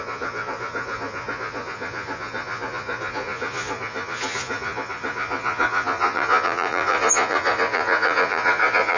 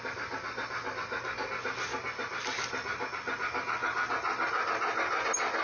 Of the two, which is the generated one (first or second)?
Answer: first